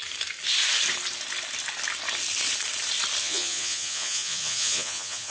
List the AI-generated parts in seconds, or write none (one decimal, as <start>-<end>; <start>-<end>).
3.2-5.3